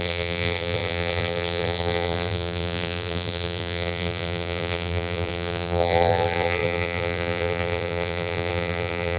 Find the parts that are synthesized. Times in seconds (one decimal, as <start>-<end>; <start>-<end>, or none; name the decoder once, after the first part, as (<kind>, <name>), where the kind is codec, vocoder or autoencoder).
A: 0.0-9.2 (vocoder, BigVGAN v2)